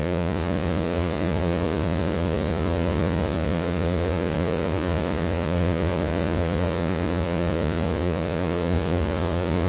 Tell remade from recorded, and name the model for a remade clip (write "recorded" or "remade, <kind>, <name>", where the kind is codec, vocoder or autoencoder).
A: remade, vocoder, Vocos